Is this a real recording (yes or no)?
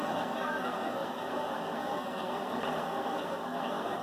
no